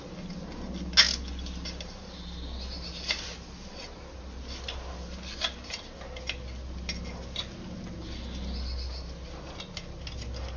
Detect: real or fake real